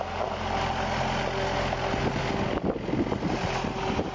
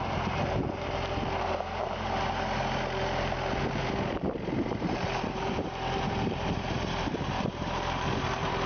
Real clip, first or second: first